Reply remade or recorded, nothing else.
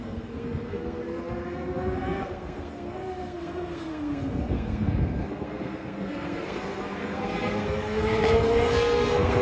remade